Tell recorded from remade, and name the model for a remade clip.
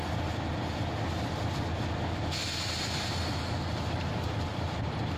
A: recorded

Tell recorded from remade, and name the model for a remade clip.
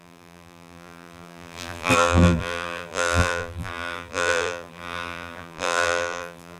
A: remade, vocoder, BigVGAN v2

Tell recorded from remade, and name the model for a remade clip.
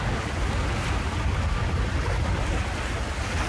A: recorded